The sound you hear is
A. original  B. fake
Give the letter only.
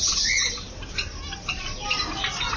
A